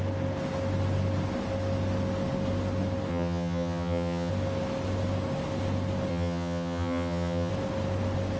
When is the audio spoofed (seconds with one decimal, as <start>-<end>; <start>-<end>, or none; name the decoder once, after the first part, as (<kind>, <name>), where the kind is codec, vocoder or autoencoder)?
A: 3.1-4.3 (vocoder, HiFi-GAN); 6.1-7.5